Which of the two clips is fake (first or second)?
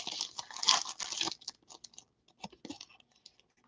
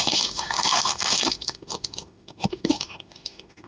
second